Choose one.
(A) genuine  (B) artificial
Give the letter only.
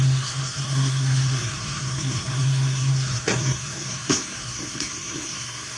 B